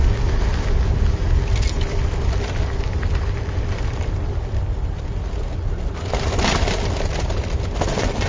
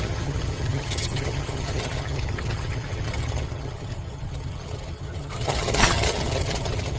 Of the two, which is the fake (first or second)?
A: second